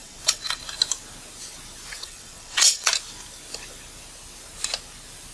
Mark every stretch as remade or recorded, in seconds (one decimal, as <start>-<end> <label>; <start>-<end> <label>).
0.0-0.6 remade; 0.6-1.9 recorded; 1.9-2.9 remade; 2.9-5.3 recorded